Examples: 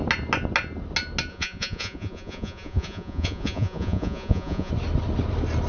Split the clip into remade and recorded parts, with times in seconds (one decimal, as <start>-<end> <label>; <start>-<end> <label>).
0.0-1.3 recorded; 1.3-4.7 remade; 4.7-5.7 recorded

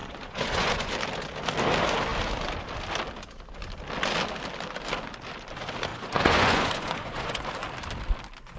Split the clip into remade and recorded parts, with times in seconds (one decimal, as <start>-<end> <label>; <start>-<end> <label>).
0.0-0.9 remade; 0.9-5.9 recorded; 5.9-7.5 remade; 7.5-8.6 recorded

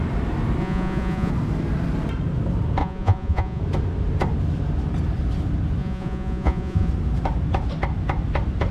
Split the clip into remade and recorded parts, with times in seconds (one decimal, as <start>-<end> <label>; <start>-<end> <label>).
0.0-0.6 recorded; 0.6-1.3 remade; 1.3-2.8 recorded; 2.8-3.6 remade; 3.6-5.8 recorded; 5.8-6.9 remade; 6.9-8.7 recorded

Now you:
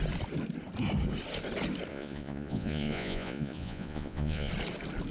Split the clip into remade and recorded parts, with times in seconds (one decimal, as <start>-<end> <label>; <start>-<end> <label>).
0.0-1.9 recorded; 1.9-4.5 remade; 4.5-5.1 recorded

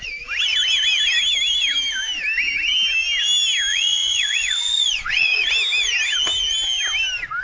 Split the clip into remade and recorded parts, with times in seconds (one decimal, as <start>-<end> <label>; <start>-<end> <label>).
0.0-3.7 recorded; 3.7-5.5 remade; 5.5-7.4 recorded